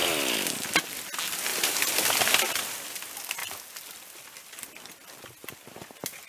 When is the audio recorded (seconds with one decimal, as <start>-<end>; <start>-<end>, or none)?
0.8-1.5; 2.5-6.3